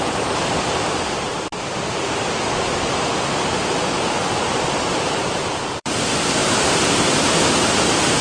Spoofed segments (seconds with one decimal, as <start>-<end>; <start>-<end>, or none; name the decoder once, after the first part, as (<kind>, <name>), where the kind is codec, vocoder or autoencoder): 0.0-3.1 (vocoder, BigVGAN v2); 4.2-8.2